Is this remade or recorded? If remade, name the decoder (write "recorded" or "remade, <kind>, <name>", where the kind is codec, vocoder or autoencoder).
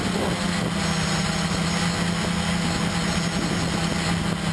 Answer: recorded